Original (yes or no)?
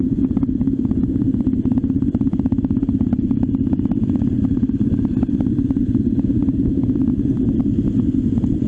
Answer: no